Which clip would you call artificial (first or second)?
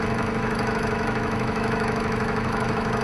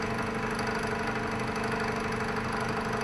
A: first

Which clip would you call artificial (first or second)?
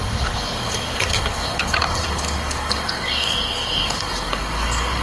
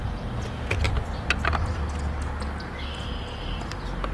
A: first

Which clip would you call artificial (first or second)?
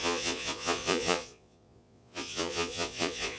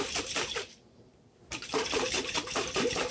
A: first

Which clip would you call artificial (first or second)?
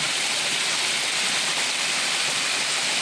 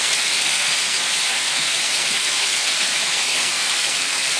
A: second